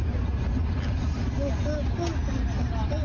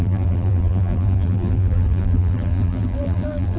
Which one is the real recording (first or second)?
first